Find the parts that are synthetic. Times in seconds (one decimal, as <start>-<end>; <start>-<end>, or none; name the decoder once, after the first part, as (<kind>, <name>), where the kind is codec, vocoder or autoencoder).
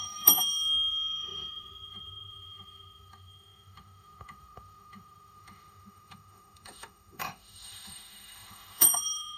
0.0-9.4 (autoencoder, DAC-VAE)